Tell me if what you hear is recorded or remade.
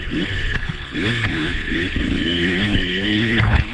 remade